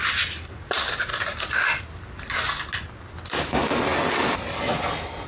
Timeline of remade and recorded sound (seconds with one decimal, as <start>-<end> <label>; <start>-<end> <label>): 0.0-5.3 recorded